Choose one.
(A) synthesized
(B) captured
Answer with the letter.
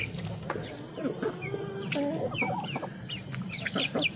B